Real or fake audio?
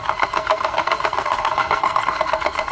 fake